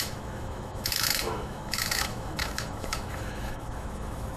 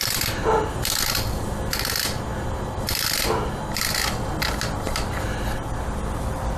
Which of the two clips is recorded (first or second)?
second